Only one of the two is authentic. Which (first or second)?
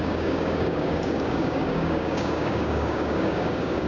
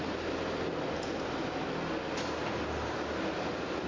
second